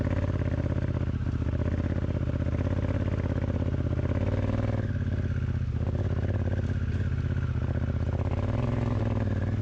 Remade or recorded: recorded